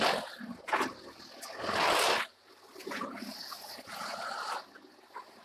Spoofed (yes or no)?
no